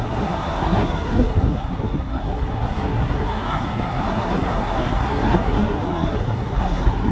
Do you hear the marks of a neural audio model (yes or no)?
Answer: yes